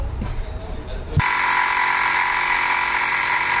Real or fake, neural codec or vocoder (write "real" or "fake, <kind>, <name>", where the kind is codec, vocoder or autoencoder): real